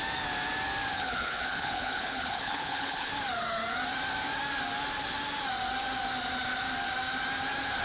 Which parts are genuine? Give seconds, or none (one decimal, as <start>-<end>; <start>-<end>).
0.0-0.9; 3.1-7.8